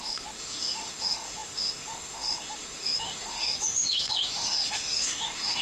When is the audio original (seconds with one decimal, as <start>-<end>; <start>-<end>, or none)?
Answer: none